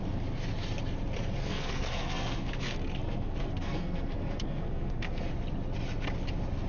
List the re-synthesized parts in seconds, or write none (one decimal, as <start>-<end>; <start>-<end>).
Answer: 1.4-5.3